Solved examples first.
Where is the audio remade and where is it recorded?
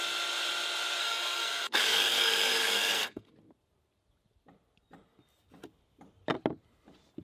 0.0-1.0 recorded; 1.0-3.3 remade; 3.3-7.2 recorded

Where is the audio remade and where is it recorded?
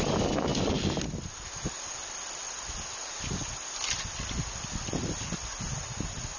0.0-6.4 recorded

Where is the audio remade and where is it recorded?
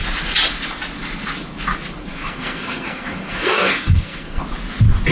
0.0-2.0 recorded; 2.0-4.4 remade; 4.4-5.1 recorded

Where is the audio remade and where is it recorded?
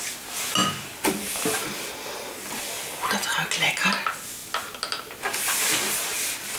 0.0-6.6 recorded